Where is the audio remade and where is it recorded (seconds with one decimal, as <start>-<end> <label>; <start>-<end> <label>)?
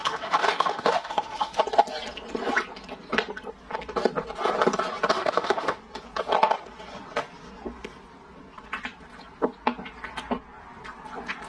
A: 0.0-1.6 remade; 1.6-5.1 recorded; 5.1-5.8 remade; 5.8-11.5 recorded